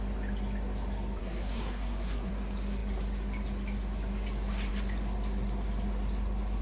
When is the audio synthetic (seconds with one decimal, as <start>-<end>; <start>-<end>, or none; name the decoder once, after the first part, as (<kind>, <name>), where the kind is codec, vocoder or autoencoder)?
1.2-2.3 (codec, SNAC)